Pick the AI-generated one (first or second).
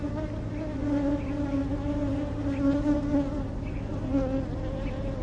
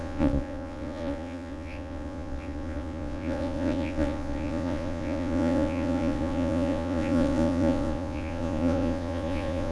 second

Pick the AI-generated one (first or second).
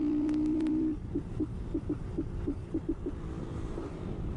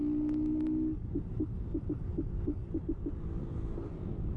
first